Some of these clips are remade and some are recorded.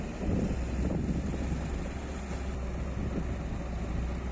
recorded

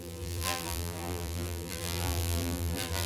remade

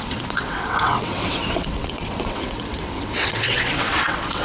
remade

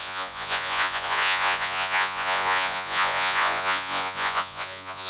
remade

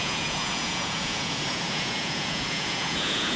remade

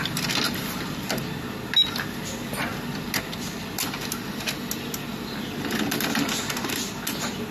recorded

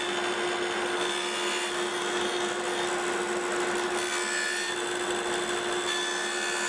recorded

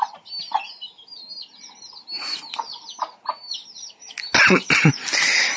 recorded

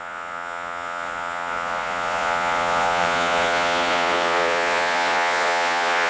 remade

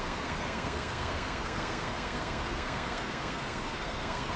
remade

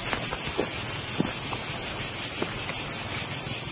recorded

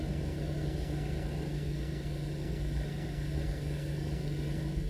remade